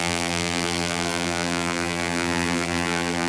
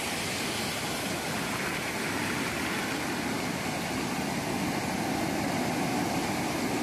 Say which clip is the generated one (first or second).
first